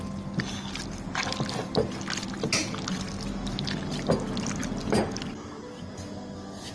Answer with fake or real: real